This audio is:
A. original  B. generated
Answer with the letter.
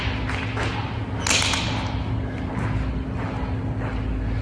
A